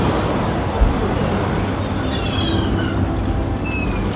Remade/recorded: recorded